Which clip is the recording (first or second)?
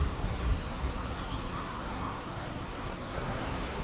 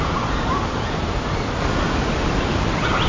second